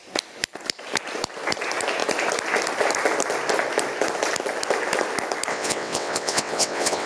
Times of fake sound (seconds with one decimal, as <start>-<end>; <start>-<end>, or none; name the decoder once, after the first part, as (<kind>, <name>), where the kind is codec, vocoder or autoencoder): 5.5-7.1 (vocoder, WaveNeXt)

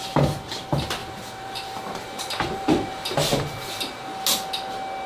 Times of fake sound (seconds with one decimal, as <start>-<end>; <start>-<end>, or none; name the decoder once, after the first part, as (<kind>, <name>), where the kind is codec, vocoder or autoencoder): 1.0-4.0 (vocoder, BigVGAN v2)

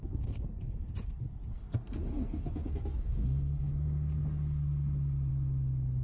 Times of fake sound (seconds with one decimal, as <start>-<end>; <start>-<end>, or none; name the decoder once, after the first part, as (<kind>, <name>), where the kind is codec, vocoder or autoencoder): 0.0-1.0 (codec, SNAC); 1.5-3.7

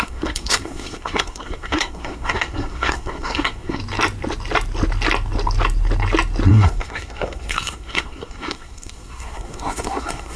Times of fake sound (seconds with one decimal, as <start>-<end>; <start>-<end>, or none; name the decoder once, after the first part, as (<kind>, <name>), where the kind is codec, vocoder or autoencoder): 0.0-3.8 (codec, SNAC); 6.5-10.4

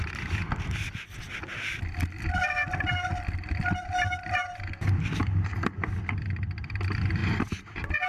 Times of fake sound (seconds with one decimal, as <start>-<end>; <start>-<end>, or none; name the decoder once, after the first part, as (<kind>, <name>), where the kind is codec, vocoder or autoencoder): none

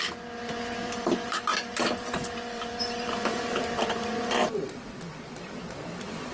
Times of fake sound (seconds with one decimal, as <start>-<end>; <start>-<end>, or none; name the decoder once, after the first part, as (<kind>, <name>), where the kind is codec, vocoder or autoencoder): 0.0-6.3 (vocoder, BigVGAN v2)

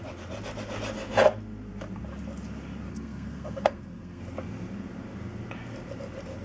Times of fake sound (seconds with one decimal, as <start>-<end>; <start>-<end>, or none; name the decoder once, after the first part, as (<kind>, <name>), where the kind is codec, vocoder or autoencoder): 2.9-4.2 (codec, SNAC)